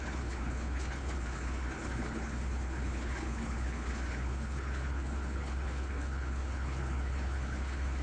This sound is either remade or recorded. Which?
remade